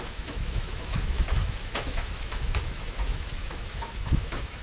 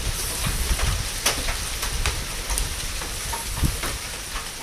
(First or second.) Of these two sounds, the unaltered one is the second